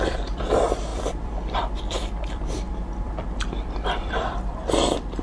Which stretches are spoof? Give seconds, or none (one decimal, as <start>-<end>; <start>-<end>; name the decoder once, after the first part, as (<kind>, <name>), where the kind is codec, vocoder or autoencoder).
0.0-5.2 (vocoder, BigVGAN v2)

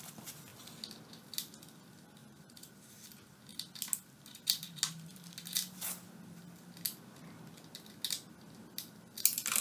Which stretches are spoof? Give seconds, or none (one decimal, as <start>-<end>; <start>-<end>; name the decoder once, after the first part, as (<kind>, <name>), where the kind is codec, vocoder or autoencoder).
2.2-2.7 (vocoder, BigVGAN v2)

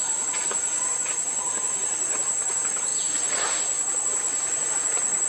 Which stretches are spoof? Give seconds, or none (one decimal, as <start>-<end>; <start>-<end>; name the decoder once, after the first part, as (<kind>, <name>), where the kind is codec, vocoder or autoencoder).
none

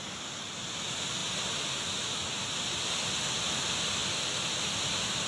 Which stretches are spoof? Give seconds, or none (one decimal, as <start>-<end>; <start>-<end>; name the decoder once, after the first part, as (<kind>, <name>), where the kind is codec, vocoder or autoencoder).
none

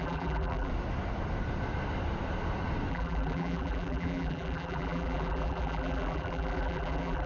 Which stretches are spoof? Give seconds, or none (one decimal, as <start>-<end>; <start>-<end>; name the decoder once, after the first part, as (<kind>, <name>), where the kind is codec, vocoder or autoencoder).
0.0-0.7 (vocoder, BigVGAN v2); 2.9-7.3